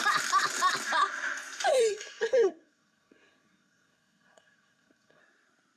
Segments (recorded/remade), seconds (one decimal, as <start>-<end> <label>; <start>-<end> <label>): 0.0-1.7 recorded; 1.7-5.2 remade; 5.2-5.8 recorded